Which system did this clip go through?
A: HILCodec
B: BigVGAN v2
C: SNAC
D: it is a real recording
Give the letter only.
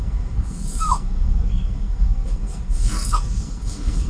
C